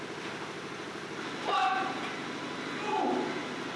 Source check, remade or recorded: recorded